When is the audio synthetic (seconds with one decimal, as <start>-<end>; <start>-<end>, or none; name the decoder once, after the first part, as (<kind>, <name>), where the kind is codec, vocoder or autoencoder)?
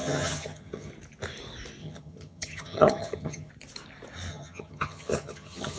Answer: 0.0-0.9 (vocoder, HiFi-GAN); 1.8-3.5; 4.3-5.8